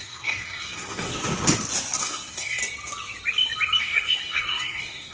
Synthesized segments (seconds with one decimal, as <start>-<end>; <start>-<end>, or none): 0.0-1.1; 2.0-2.6; 3.8-5.1

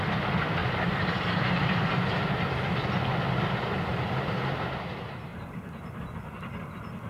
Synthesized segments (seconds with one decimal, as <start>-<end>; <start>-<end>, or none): 0.6-1.8; 3.9-4.5; 5.3-6.4

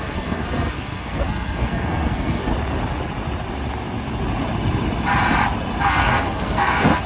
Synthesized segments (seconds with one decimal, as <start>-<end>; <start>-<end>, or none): 0.0-2.5; 5.8-7.1

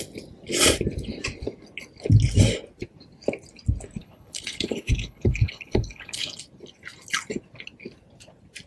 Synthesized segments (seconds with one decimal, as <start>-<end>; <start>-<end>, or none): 4.0-6.4

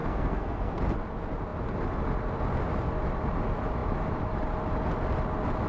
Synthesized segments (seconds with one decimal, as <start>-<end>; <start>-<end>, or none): 0.0-0.8

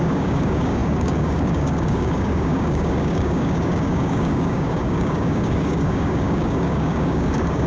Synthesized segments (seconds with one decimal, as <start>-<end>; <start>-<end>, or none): 0.0-7.7

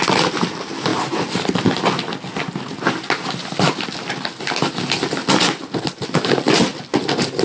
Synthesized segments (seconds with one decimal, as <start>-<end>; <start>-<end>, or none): none